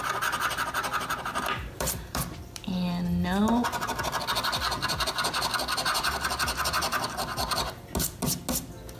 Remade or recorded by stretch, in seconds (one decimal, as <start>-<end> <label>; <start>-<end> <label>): 0.0-1.3 recorded; 1.3-2.6 remade; 2.6-9.0 recorded